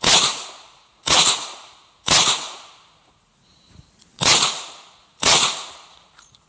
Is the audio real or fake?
fake